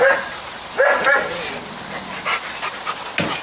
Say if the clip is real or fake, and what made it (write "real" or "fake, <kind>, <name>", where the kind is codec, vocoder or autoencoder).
real